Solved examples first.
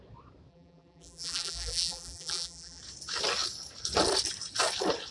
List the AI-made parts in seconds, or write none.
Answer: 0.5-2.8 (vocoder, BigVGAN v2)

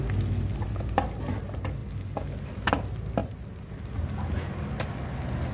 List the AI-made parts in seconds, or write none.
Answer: none

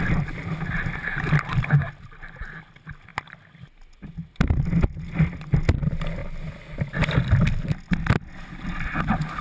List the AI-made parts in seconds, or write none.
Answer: none

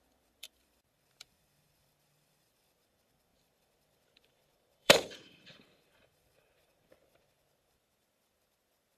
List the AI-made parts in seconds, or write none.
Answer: 0.0-9.0 (vocoder, BigVGAN v2)

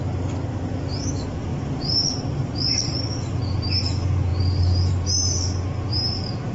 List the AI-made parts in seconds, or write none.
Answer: 1.5-2.8 (vocoder, BigVGAN v2); 4.3-4.9

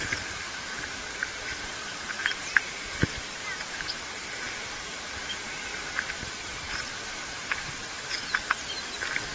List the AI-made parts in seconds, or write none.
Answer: 0.0-4.0 (vocoder, BigVGAN v2); 5.7-8.1